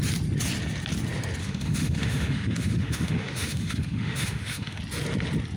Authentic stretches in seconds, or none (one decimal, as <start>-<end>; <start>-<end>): 0.0-1.4; 4.8-5.6